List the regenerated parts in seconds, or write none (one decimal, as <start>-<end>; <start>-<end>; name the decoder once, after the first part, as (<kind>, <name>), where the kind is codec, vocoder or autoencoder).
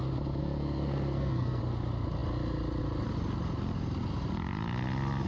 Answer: 0.4-1.6 (codec, SNAC)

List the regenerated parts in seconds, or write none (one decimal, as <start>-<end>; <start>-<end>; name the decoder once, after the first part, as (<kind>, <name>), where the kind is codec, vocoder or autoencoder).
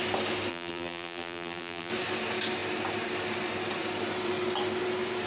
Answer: 0.5-1.9 (vocoder, BigVGAN v2)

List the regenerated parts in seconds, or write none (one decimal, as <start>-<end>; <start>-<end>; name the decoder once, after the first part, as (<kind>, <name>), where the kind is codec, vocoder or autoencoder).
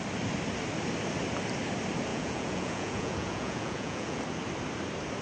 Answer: 2.1-4.2 (vocoder, Vocos)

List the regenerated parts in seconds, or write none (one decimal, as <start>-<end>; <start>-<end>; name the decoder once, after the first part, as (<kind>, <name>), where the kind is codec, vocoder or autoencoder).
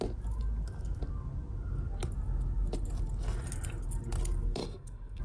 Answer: 4.6-5.2 (codec, SNAC)